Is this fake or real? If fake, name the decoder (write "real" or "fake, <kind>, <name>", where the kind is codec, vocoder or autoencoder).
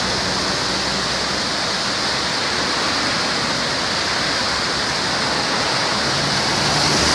real